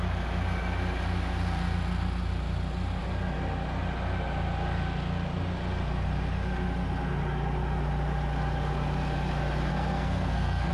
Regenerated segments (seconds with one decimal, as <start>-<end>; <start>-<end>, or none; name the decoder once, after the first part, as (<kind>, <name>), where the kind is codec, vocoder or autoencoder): 9.7-10.7 (codec, SNAC)